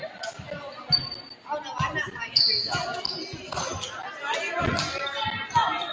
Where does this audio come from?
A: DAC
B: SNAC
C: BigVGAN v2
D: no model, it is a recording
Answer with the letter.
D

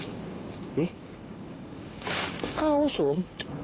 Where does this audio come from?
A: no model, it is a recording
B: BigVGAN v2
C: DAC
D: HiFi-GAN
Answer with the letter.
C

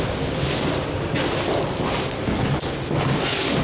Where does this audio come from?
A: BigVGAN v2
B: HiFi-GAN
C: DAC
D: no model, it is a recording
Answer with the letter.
D